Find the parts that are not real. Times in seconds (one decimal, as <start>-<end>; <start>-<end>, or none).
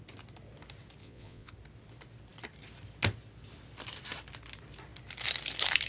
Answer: 1.0-1.5